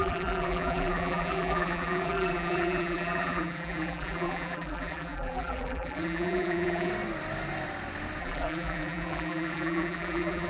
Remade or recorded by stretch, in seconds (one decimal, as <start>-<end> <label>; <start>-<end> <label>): 0.0-6.9 remade; 6.9-8.2 recorded; 8.2-10.5 remade